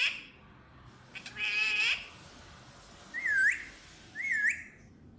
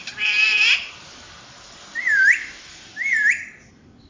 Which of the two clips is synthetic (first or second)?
second